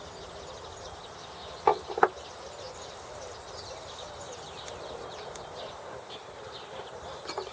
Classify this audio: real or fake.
real